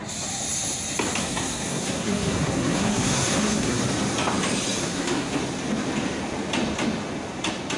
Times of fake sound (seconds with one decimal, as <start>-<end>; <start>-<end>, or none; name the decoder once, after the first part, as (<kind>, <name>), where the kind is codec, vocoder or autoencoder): 1.2-3.8 (codec, SNAC); 4.8-5.4